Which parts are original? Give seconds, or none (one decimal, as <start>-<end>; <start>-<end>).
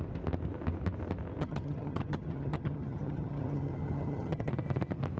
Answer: 0.0-1.4; 4.5-5.2